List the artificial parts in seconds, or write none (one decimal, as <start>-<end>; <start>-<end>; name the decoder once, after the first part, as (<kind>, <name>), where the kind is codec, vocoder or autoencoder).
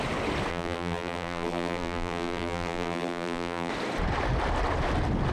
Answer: 0.5-3.7 (vocoder, BigVGAN v2)